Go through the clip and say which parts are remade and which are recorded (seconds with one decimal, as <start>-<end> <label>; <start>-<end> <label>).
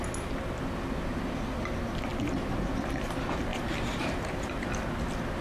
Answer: 0.0-3.5 recorded; 3.5-4.9 remade; 4.9-5.4 recorded